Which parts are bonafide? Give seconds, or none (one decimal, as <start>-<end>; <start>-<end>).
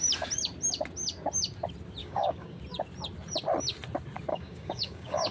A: 0.0-2.0; 2.6-4.3